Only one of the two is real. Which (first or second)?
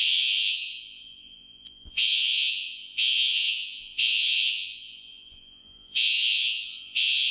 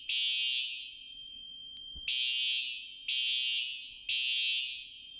second